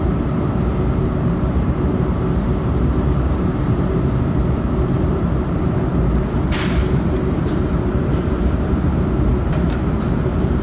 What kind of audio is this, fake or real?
fake